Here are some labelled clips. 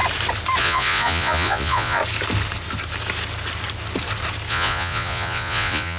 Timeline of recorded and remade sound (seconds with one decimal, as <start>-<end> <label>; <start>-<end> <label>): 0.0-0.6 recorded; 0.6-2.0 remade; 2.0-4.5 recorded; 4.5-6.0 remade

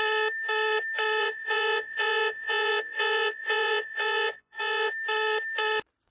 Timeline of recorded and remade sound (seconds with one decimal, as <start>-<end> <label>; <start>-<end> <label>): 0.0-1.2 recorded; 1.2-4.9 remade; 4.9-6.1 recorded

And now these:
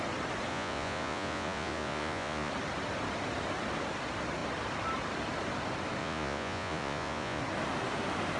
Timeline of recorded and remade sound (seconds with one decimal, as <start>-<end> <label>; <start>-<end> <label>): 0.0-0.5 recorded; 0.5-2.5 remade; 2.5-6.0 recorded; 6.0-7.4 remade; 7.4-8.4 recorded

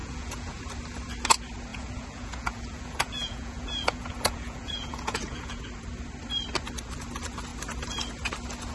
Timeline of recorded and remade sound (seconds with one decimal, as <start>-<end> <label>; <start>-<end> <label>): 0.0-0.6 remade; 0.6-1.7 recorded; 1.7-5.6 remade; 5.6-8.7 recorded

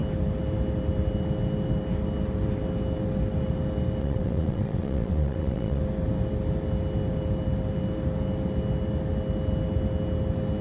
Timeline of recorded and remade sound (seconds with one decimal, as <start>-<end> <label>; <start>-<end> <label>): 0.0-4.0 recorded; 4.0-5.8 remade; 5.8-10.6 recorded

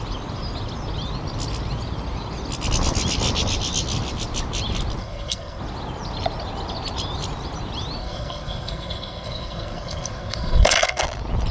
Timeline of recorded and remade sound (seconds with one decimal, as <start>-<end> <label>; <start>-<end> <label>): 0.0-5.0 recorded; 5.0-5.6 remade; 5.6-8.0 recorded; 8.0-11.0 remade; 11.0-11.5 recorded

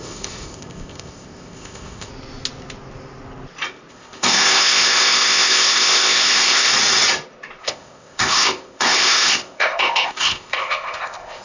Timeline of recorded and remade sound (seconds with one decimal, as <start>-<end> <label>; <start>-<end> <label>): 0.0-2.1 remade; 2.1-3.9 recorded; 3.9-6.7 remade; 6.7-7.6 recorded; 7.6-11.4 remade